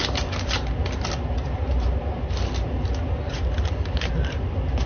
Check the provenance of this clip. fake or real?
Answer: real